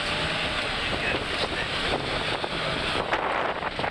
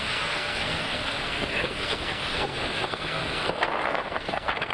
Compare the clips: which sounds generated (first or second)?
second